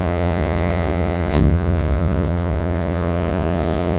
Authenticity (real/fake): fake